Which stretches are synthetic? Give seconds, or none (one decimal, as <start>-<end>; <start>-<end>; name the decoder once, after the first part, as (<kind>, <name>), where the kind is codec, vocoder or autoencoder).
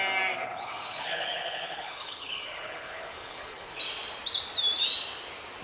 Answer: 0.4-3.8 (codec, HILCodec)